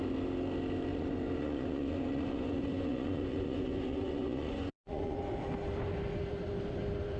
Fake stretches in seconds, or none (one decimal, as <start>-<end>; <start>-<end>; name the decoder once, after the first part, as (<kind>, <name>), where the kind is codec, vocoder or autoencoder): 0.9-5.2 (vocoder, Vocos)